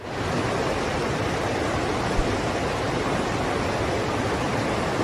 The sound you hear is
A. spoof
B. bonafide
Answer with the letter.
B